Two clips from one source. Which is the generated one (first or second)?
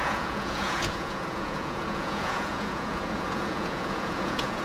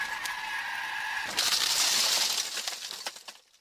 first